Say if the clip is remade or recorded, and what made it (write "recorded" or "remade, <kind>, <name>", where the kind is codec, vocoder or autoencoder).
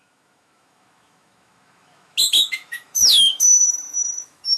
remade, autoencoder, DAC-VAE